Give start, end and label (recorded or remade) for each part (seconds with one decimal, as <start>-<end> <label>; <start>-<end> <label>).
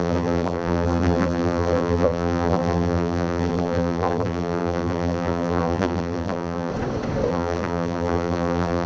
0.0-6.7 remade; 6.7-7.3 recorded; 7.3-8.9 remade